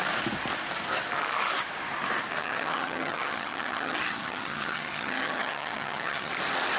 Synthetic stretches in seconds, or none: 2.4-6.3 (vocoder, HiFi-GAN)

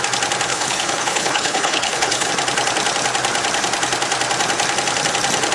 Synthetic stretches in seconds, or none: 0.5-2.3 (codec, HILCodec)